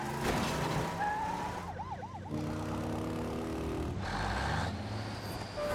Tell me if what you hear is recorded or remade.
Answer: recorded